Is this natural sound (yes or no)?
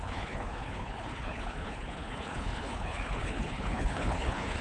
no